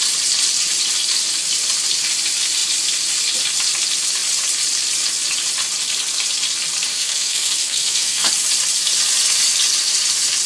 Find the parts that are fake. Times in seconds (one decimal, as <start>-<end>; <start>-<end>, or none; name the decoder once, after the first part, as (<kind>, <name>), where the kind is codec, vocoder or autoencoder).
6.9-8.3 (codec, SNAC)